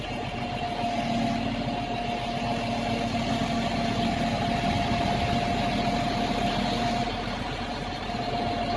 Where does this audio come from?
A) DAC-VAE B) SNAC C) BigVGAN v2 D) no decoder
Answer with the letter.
D